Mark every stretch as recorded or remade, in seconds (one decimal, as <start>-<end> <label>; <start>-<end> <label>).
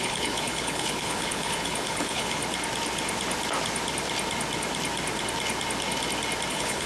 0.0-2.4 remade; 2.4-6.5 recorded; 6.5-6.9 remade